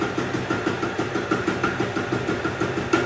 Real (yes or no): yes